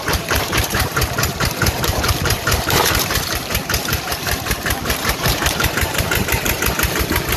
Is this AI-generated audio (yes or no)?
yes